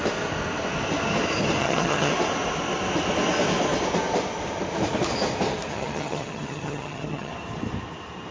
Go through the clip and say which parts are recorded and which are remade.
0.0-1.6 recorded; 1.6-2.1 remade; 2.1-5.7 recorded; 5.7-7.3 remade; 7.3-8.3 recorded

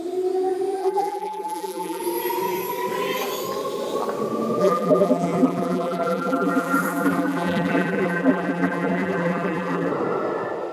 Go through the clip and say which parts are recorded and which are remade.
0.0-0.8 recorded; 0.8-2.0 remade; 2.0-4.6 recorded; 4.6-9.9 remade; 9.9-10.7 recorded

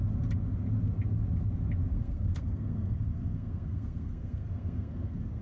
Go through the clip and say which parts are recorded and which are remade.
0.0-1.9 recorded; 1.9-5.4 remade

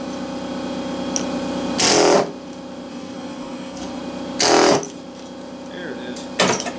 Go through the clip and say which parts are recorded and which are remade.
0.0-2.9 recorded; 2.9-4.0 remade; 4.0-6.8 recorded